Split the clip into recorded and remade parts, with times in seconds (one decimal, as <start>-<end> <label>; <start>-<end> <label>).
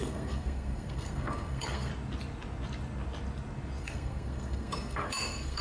0.0-1.9 remade; 1.9-3.8 recorded; 3.8-5.6 remade